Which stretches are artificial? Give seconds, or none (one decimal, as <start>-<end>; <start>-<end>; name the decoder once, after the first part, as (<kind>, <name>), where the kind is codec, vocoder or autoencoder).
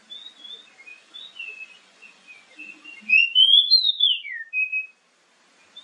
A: 0.9-4.4 (vocoder, Vocos)